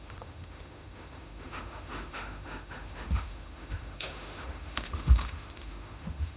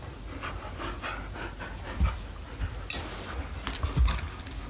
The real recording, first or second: second